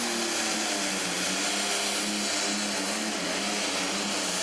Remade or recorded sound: recorded